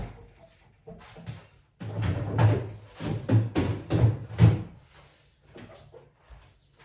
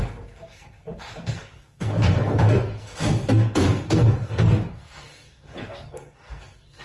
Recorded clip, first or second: first